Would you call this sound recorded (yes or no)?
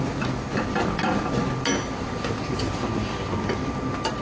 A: yes